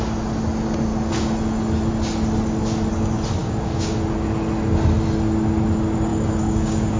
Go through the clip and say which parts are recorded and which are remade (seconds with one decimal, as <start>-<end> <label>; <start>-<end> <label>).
0.0-3.4 recorded; 3.4-3.9 remade; 3.9-6.1 recorded; 6.1-7.0 remade